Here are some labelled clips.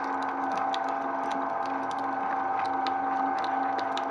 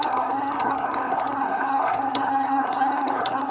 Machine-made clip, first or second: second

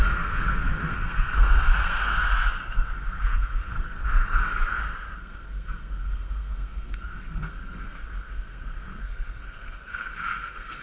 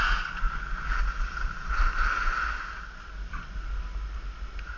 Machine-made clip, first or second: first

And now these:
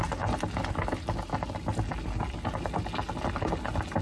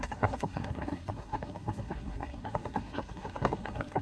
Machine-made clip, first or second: second